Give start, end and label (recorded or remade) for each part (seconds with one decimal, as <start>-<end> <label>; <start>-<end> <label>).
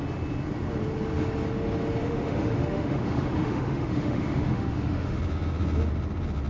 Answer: 0.0-2.0 recorded; 2.0-5.2 remade; 5.2-6.5 recorded